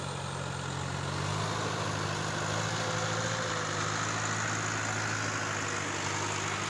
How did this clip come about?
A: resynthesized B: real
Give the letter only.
B